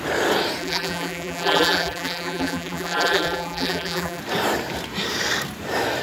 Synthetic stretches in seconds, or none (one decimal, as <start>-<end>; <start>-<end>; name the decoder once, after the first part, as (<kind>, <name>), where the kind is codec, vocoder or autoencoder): 0.6-4.2 (vocoder, BigVGAN v2)